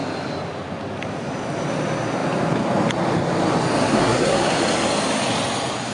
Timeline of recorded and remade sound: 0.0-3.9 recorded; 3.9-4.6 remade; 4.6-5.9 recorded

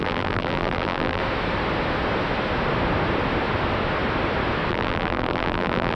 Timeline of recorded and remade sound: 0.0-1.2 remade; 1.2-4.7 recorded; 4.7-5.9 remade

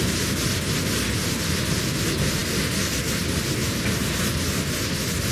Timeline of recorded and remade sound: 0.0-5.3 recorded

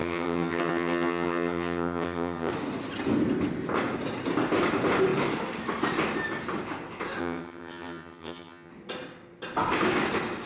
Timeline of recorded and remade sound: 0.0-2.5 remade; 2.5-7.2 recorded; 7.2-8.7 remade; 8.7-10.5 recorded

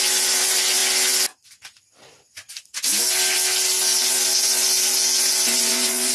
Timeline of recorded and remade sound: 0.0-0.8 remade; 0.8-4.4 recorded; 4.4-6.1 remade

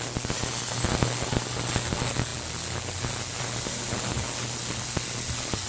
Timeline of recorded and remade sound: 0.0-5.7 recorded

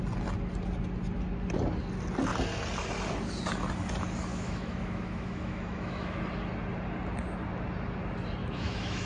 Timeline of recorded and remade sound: 0.0-4.3 recorded; 4.3-6.2 remade; 6.2-8.4 recorded; 8.4-9.1 remade

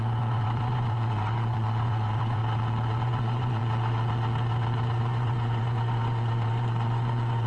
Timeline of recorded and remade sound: 0.0-2.4 remade; 2.4-3.0 recorded; 3.0-3.6 remade; 3.6-5.0 recorded; 5.0-7.5 remade